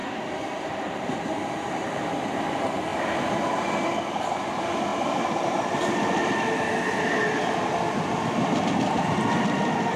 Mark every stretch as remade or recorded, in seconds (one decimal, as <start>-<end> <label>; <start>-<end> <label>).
0.0-10.0 recorded